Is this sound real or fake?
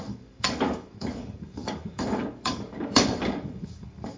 fake